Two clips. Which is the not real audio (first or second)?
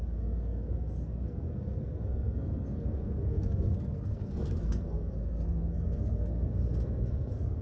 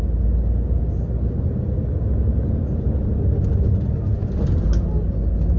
first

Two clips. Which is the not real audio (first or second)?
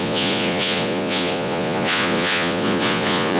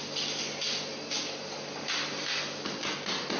first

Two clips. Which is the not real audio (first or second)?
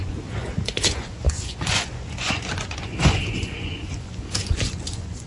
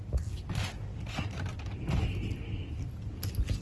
first